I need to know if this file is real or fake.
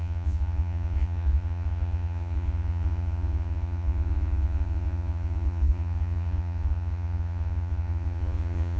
fake